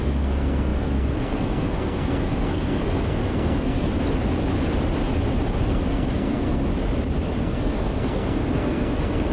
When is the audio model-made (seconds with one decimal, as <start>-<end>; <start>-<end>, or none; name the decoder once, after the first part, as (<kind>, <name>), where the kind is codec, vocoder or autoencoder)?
0.0-3.9 (codec, SNAC); 5.6-6.7; 7.4-9.3